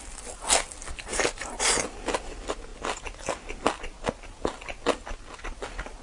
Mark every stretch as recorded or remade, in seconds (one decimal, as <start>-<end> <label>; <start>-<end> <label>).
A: 0.0-6.0 recorded